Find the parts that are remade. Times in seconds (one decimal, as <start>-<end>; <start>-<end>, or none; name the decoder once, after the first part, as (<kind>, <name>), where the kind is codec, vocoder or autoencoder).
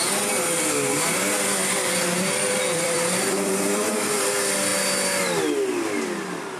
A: 1.6-3.9 (vocoder, BigVGAN v2)